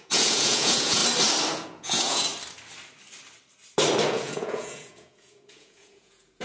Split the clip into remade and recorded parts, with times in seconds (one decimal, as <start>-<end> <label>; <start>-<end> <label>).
0.0-1.0 remade; 1.0-1.5 recorded; 1.5-2.3 remade; 2.3-4.1 recorded; 4.1-6.4 remade